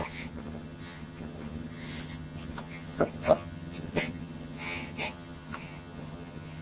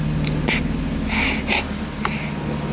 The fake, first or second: first